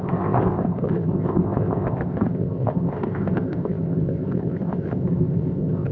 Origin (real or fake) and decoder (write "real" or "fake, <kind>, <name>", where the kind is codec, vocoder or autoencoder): fake, codec, ZipCodec